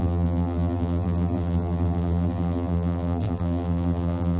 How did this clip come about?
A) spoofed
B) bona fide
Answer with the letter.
A